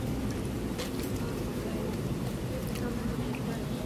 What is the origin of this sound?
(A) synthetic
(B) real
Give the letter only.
A